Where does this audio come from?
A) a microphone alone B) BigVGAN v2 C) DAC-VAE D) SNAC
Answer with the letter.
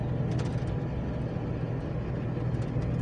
A